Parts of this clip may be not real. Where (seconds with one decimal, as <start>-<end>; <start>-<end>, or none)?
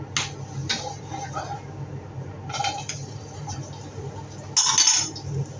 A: 0.6-4.0